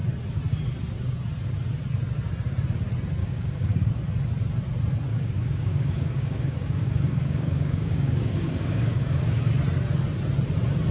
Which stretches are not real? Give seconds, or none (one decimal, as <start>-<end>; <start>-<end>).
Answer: 3.2-3.9; 5.1-9.4